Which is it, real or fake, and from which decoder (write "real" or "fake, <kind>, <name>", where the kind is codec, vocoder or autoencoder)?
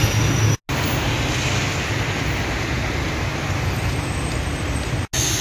real